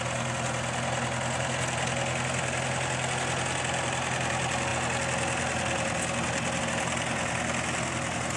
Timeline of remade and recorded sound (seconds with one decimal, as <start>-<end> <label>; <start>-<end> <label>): 0.0-8.4 recorded